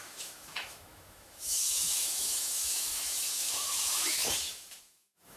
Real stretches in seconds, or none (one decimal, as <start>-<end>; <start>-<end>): none